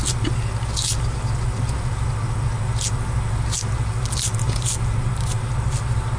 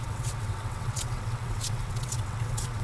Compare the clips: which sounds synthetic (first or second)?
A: second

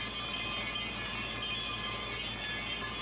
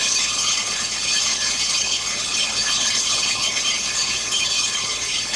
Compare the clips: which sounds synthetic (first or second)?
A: second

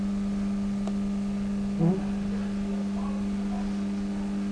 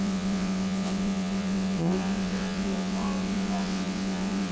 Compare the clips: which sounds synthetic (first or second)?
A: second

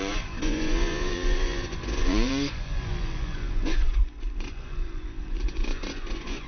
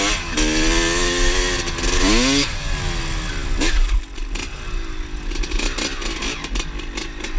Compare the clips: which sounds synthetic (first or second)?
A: first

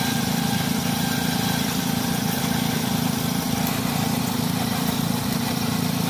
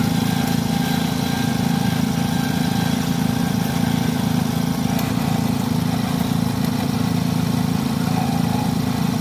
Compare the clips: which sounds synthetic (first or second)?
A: first